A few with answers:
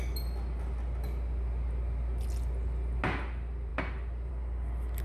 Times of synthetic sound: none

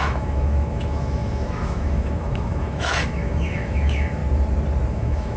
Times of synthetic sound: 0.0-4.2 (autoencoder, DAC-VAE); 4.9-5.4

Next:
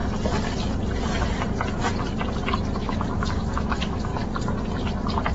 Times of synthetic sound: 2.8-4.1 (autoencoder, DAC-VAE)

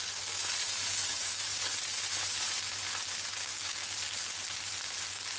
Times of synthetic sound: 0.0-0.4 (codec, DAC); 0.9-1.6; 3.3-3.8; 5.0-5.4